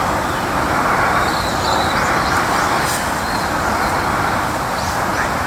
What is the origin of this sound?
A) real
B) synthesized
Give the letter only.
A